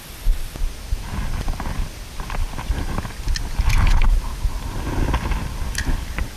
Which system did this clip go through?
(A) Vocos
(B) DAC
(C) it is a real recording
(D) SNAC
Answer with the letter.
C